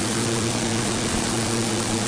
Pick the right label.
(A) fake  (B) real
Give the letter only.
A